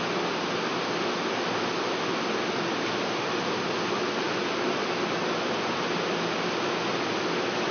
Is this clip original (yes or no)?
yes